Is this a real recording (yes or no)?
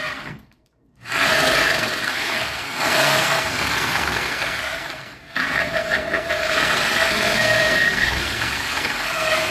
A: no